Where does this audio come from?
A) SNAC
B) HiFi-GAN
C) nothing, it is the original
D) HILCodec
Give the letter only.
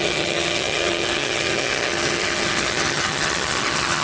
B